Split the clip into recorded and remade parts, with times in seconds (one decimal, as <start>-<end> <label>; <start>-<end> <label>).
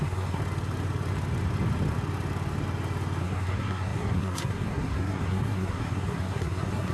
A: 0.0-0.4 remade; 0.4-3.2 recorded; 3.2-6.9 remade